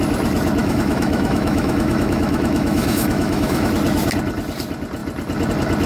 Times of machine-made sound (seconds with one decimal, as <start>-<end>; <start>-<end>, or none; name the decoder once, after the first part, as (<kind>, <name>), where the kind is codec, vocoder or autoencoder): 0.6-3.7 (autoencoder, DAC-VAE)